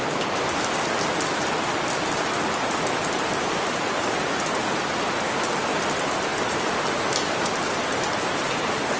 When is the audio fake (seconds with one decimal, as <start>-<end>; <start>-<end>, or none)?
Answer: none